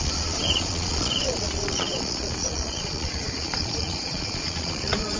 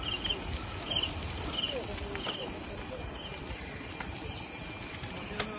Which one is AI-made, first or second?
first